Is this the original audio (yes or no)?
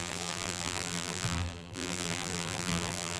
no